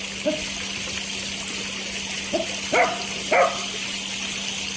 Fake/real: real